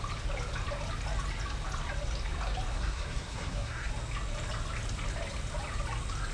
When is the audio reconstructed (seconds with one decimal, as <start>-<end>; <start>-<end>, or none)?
2.7-3.9